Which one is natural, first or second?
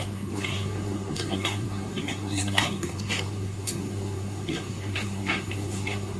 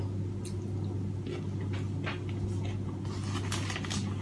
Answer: second